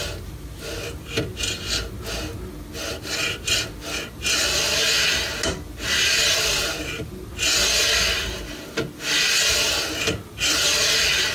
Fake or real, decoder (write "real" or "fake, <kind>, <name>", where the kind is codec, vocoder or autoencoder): real